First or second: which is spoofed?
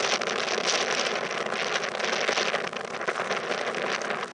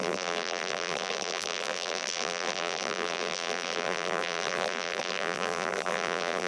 second